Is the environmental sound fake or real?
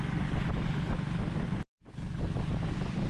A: fake